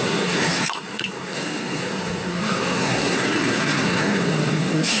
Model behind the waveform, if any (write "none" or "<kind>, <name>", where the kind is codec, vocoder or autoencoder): codec, SNAC